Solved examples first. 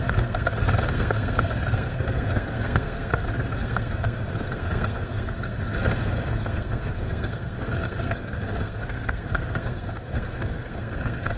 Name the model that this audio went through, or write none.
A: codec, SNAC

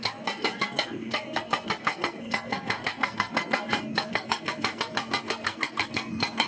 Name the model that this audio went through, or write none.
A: codec, SNAC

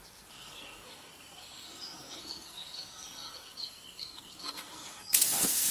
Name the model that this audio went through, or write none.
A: codec, SNAC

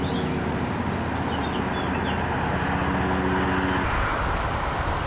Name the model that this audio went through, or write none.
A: none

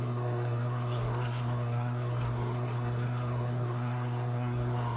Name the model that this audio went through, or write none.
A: codec, SNAC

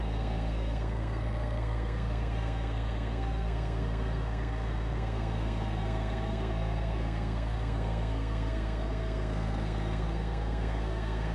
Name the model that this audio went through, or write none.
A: codec, SNAC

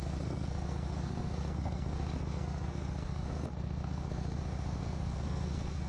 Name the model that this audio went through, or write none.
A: codec, SNAC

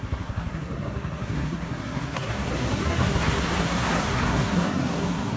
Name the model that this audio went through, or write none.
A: codec, SNAC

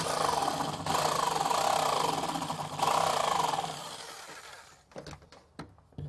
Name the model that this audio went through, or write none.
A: none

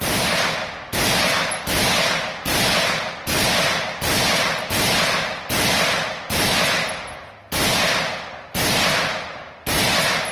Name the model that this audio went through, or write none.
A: none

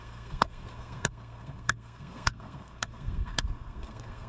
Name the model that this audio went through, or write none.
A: codec, SNAC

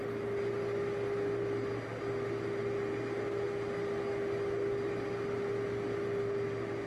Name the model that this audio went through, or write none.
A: none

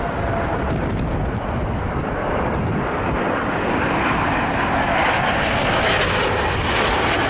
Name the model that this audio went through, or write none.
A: none